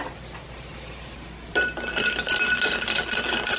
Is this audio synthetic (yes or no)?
no